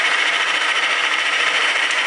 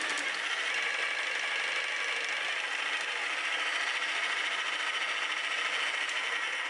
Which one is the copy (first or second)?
first